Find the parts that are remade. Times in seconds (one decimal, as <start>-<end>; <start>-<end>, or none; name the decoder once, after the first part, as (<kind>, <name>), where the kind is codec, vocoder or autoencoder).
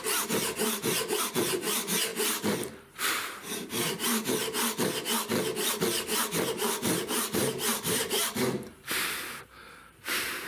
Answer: 0.0-4.4 (vocoder, BigVGAN v2); 7.0-10.5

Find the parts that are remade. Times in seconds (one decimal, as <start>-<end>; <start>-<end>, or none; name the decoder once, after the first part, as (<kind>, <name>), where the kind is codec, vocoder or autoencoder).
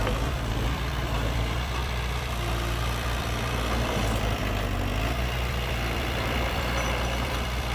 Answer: 0.0-4.4 (vocoder, BigVGAN v2); 5.5-7.7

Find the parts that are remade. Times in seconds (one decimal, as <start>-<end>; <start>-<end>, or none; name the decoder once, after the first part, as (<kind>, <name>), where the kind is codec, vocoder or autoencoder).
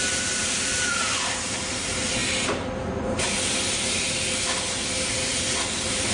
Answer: none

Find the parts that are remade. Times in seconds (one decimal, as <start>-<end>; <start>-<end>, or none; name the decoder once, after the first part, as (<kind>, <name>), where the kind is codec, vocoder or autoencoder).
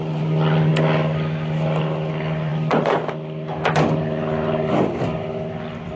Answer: 0.0-0.7 (vocoder, BigVGAN v2); 2.1-2.5; 5.0-6.0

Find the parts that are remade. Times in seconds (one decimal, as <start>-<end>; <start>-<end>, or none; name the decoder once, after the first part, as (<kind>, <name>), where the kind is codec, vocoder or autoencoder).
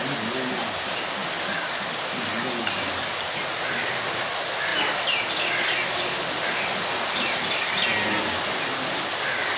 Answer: none